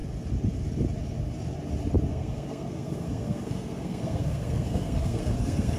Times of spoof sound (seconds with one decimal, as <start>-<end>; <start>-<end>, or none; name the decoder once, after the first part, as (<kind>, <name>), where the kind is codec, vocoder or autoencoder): 2.1-5.8 (codec, SNAC)